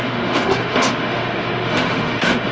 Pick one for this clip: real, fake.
fake